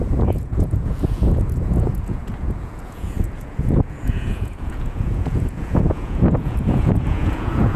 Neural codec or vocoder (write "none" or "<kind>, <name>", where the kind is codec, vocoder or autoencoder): vocoder, Vocos